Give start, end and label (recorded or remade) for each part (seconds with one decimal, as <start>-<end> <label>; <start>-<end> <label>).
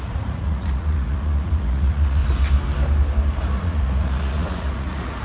0.0-2.2 remade; 2.2-3.5 recorded; 3.5-5.2 remade